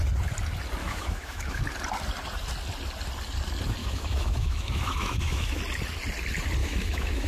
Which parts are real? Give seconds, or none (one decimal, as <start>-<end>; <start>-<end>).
0.0-0.8; 1.6-3.8; 5.6-6.6